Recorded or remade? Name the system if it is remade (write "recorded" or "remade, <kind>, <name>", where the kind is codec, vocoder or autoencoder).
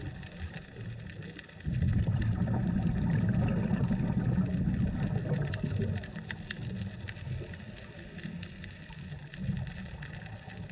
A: recorded